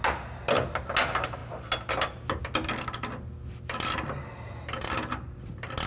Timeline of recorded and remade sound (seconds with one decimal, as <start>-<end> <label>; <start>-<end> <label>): 0.0-5.9 recorded